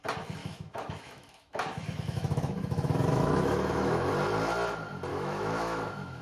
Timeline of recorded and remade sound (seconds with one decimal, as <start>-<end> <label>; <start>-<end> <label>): 0.0-0.4 recorded; 0.4-4.1 remade; 4.1-5.1 recorded; 5.1-6.2 remade